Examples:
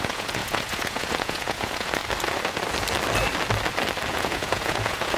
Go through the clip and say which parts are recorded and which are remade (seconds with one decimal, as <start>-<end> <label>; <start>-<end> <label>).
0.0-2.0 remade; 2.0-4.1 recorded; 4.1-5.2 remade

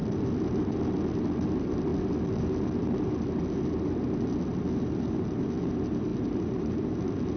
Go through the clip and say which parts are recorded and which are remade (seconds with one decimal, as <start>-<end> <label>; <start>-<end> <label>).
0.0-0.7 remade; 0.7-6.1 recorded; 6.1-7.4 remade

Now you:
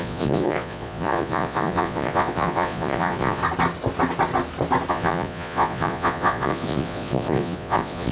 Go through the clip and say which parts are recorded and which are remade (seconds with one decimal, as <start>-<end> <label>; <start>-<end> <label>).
0.0-3.4 remade; 3.4-4.9 recorded; 4.9-8.1 remade

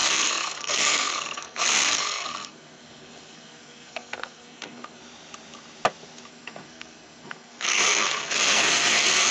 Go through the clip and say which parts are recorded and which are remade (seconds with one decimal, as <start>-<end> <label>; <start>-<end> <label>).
0.0-5.0 remade; 5.0-6.3 recorded; 6.3-9.3 remade

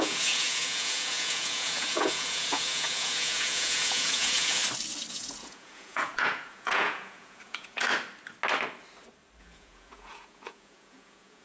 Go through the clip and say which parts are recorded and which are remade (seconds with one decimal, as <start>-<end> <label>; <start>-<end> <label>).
0.0-4.6 remade; 4.6-5.1 recorded; 5.1-7.9 remade; 7.9-9.4 recorded; 9.4-11.4 remade